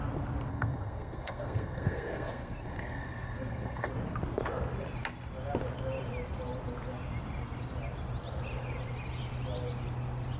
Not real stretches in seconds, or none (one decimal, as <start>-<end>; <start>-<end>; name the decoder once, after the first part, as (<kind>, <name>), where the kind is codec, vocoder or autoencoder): 0.5-3.9 (codec, SNAC)